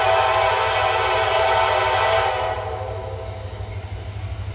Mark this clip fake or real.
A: real